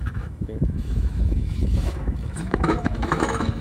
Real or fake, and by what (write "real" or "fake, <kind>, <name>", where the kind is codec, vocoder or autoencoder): fake, autoencoder, DAC-VAE